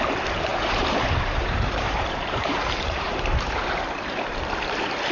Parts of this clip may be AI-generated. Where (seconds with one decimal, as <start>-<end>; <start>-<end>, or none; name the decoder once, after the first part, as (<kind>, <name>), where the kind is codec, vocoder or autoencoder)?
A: 0.5-3.6 (vocoder, BigVGAN v2)